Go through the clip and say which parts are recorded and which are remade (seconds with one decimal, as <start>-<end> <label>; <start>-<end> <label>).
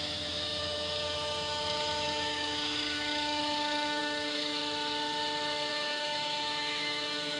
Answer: 0.0-4.6 remade; 4.6-5.7 recorded; 5.7-7.4 remade